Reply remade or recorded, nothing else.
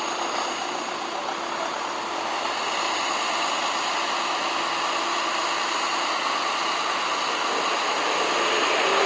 recorded